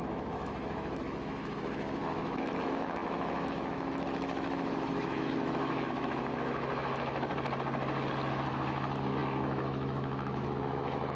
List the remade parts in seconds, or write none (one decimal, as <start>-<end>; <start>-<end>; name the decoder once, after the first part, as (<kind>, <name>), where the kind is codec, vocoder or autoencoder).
0.0-7.3 (autoencoder, DAC-VAE); 8.5-11.2